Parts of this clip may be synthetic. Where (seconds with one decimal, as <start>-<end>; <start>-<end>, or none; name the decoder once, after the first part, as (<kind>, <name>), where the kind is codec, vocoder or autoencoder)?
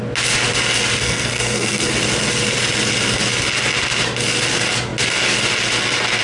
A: 1.0-1.9 (codec, SNAC)